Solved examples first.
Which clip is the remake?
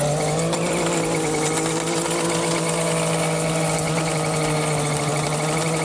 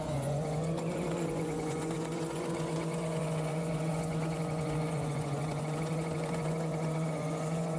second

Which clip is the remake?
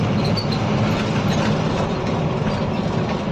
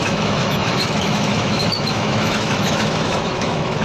second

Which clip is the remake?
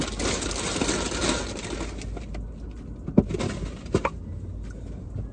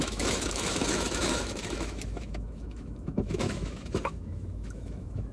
second